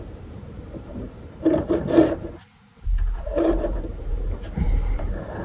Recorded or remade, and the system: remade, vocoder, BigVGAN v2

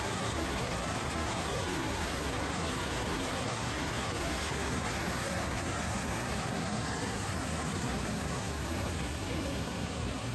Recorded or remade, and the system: remade, codec, SNAC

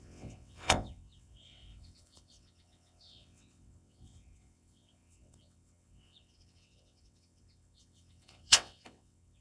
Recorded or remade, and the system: remade, vocoder, WaveNeXt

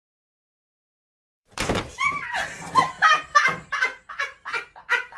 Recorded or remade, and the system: remade, vocoder, BigVGAN v2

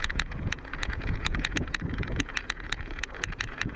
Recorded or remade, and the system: remade, vocoder, Vocos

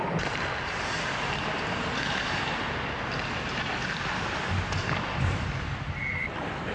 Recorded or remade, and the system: recorded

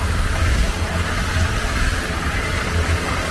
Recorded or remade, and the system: recorded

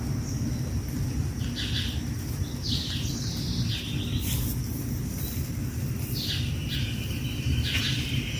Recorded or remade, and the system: recorded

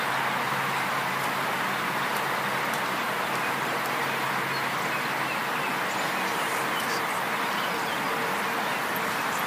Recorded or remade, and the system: recorded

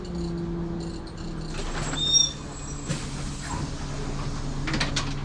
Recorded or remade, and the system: recorded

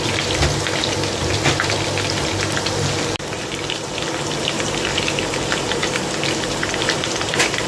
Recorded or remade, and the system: remade, vocoder, BigVGAN v2